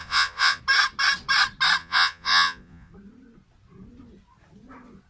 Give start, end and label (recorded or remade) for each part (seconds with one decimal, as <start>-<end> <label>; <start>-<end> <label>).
0.0-0.6 remade; 0.6-1.8 recorded; 1.8-2.9 remade; 2.9-5.1 recorded